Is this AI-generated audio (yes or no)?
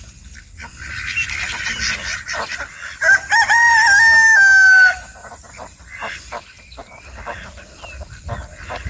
no